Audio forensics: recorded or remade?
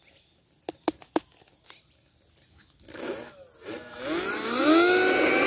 recorded